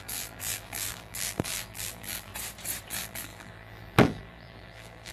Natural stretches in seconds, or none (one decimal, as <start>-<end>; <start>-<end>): 2.3-2.9